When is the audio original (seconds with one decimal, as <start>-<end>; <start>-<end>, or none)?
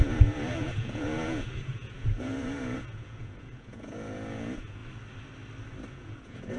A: 4.8-5.9